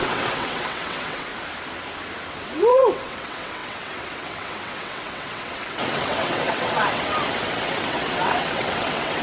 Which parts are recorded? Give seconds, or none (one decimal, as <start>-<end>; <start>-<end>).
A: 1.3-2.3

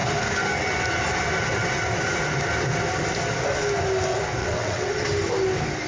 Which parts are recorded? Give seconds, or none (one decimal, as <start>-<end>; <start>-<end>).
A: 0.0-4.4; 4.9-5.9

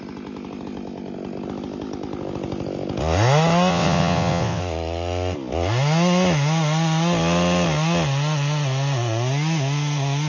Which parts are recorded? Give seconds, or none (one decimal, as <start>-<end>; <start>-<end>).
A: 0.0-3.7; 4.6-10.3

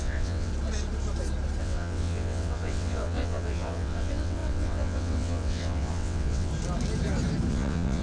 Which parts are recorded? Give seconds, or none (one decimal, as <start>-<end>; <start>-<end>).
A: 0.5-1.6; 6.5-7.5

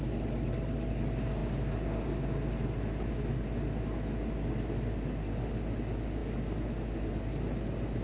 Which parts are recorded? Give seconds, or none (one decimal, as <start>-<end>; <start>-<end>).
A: 0.0-8.0

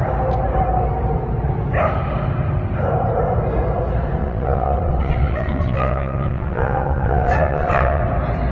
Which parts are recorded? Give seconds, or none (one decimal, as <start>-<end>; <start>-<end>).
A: 0.0-4.2; 8.0-8.5

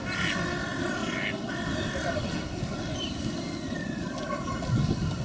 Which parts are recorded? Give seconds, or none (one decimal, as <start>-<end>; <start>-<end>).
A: 0.0-5.2

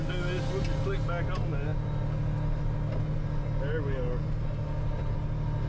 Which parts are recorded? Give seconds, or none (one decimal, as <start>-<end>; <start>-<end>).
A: 0.0-5.7